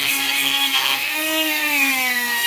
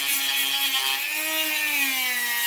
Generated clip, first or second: first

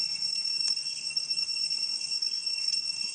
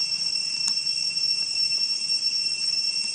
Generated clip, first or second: first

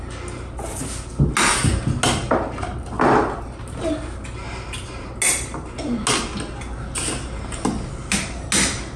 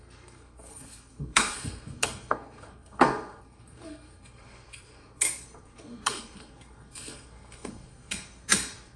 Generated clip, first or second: second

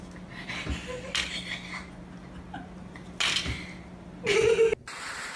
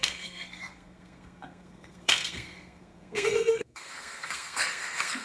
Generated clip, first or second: second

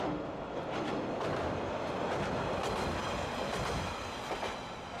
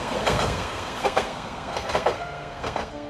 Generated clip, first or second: second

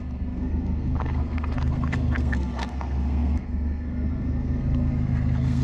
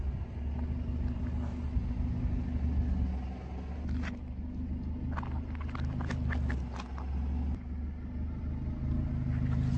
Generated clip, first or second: first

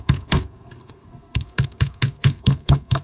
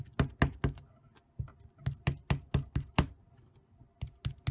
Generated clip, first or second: first